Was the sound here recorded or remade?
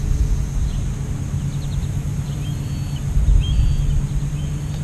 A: recorded